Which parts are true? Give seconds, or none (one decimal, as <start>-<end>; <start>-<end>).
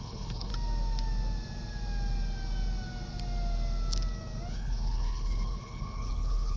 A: 0.5-4.5